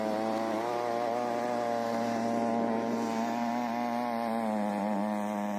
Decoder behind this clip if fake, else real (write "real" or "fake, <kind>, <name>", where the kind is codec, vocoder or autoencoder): real